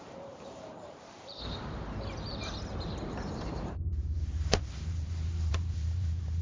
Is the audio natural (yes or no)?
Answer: no